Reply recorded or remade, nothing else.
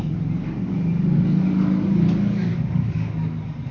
remade